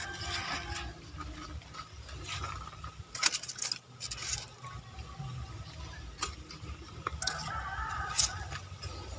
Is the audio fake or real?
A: real